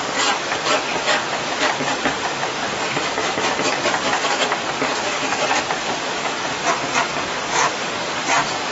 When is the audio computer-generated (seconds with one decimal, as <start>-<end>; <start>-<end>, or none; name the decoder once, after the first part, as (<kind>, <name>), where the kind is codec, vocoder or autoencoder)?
0.0-8.7 (codec, DAC)